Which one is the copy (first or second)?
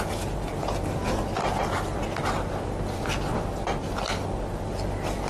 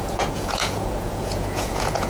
second